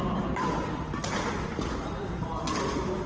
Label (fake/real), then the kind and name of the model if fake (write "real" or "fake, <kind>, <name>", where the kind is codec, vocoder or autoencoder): real